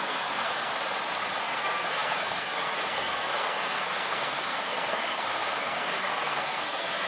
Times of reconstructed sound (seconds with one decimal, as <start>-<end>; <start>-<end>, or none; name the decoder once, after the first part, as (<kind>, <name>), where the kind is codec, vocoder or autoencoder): 0.0-0.7 (codec, SNAC); 1.4-7.1